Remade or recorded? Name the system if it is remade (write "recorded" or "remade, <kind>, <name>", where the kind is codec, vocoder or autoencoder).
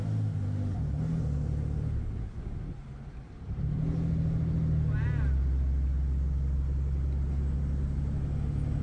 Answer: recorded